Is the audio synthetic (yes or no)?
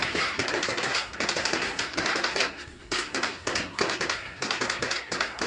yes